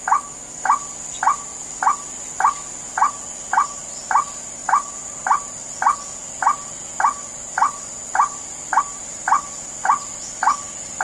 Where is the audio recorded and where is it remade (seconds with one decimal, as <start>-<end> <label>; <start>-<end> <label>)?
0.0-11.0 recorded